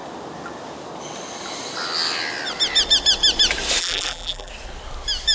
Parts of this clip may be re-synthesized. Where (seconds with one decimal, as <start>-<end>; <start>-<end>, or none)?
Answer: 3.8-4.5